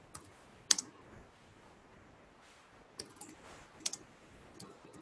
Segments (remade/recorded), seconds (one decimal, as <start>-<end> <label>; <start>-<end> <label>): 0.0-5.0 recorded